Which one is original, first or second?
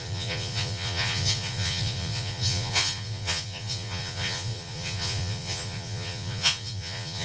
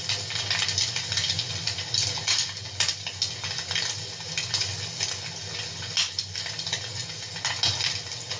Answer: second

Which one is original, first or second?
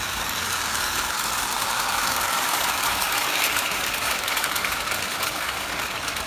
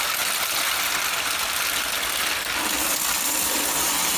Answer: second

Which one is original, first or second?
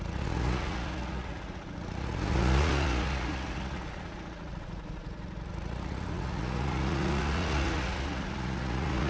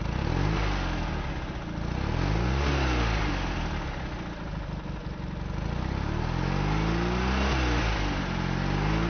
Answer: second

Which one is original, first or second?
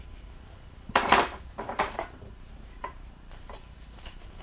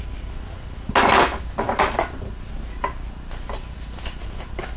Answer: second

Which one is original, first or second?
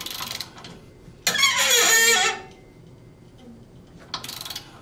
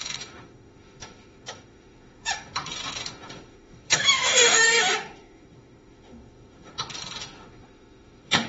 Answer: first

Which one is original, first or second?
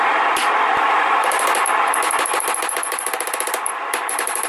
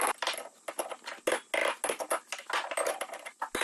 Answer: second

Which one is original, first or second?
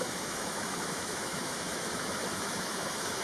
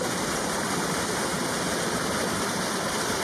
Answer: second